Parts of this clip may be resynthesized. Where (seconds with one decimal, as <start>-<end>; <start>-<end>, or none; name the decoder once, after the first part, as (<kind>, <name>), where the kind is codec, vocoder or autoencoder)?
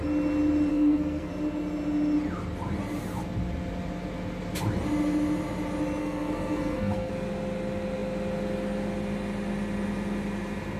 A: 0.7-1.3 (codec, SNAC); 6.0-7.1